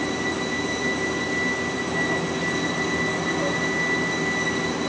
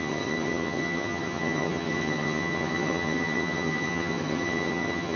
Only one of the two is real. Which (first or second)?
first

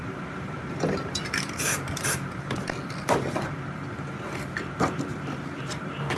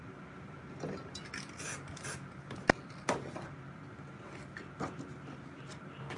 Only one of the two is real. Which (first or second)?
second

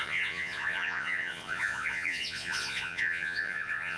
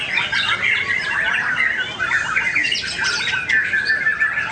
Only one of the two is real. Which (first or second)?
second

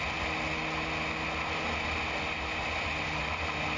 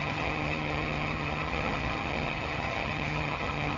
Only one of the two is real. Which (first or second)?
first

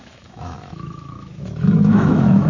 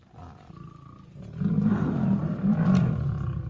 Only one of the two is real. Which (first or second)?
second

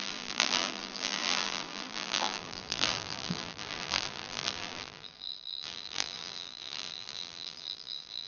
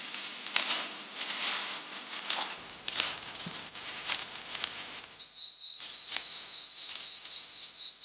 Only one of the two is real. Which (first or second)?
second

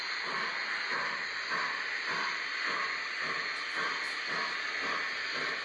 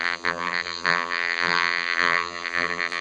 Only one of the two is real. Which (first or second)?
first